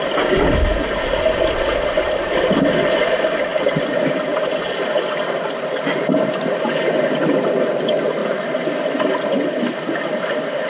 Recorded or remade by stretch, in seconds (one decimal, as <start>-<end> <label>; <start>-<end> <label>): 0.0-10.7 recorded

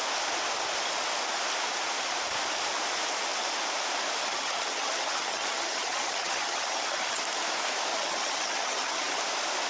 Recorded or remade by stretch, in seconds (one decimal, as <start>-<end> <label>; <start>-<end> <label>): 0.0-4.3 recorded; 4.3-7.2 remade; 7.2-7.9 recorded; 7.9-9.2 remade; 9.2-9.7 recorded

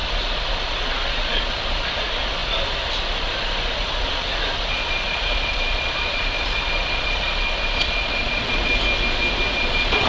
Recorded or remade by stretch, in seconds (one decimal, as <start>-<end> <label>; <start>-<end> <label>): 0.0-8.7 remade; 8.7-9.6 recorded; 9.6-10.1 remade

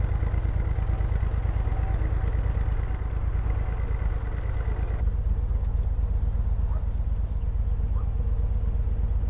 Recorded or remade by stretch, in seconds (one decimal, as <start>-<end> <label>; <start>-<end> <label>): 0.0-9.3 recorded

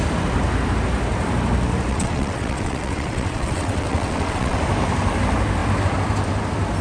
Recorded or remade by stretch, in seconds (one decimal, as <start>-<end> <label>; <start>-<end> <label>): 0.0-1.9 recorded; 1.9-4.6 remade; 4.6-6.8 recorded

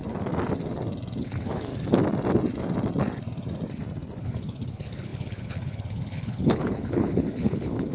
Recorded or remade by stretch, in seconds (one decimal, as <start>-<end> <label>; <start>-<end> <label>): 0.0-1.2 recorded; 1.2-1.7 remade; 1.7-4.2 recorded; 4.2-7.9 remade